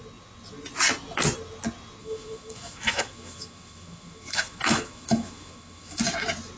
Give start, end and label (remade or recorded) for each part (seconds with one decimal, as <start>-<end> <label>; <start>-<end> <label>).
0.0-2.0 recorded; 2.0-6.0 remade; 6.0-6.6 recorded